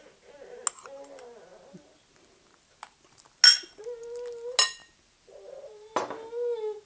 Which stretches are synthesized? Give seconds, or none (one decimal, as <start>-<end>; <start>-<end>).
4.8-5.9